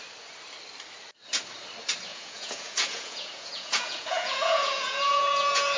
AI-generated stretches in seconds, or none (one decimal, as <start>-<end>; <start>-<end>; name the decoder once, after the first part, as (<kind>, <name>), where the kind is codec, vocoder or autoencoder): 2.1-5.8 (vocoder, Vocos)